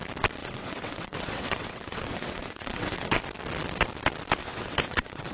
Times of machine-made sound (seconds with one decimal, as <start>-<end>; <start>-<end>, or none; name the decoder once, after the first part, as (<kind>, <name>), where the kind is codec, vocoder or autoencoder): 0.4-3.2 (vocoder, WaveNeXt); 4.4-5.3